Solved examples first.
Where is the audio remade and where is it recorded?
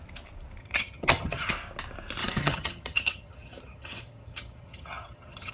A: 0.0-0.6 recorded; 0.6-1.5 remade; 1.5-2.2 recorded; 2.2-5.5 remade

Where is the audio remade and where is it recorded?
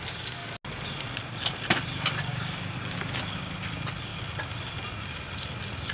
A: 0.0-2.3 recorded; 2.3-3.2 remade; 3.2-5.9 recorded